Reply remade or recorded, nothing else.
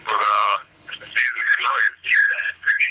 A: remade